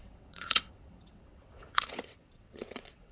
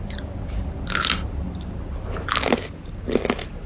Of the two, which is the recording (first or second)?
second